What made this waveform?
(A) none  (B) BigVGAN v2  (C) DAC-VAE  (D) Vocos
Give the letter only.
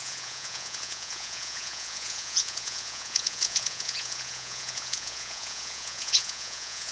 D